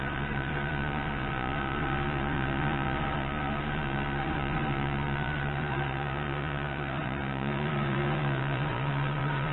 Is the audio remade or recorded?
remade